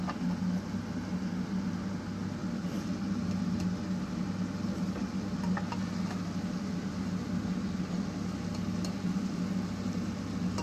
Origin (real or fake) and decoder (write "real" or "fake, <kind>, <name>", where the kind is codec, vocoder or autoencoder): real